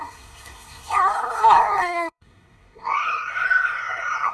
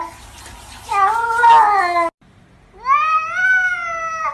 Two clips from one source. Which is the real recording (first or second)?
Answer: second